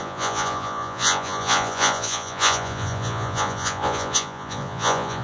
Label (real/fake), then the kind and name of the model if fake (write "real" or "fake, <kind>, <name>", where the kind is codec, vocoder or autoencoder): fake, vocoder, Vocos